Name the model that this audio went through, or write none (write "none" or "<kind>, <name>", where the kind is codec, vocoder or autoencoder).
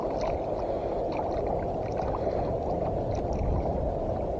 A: none